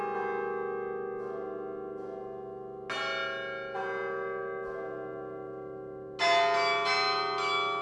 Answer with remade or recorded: recorded